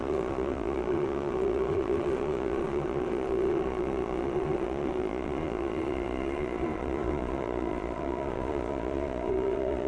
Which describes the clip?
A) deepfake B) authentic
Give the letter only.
A